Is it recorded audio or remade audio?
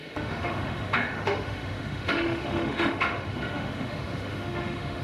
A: remade